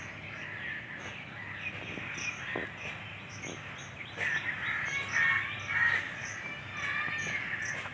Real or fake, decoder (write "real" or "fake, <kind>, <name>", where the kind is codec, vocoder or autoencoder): real